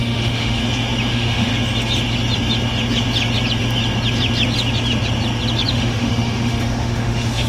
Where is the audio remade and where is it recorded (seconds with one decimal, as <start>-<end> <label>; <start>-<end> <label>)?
0.0-0.6 remade; 0.6-1.1 recorded; 1.1-1.5 remade; 1.5-5.7 recorded; 5.7-7.5 remade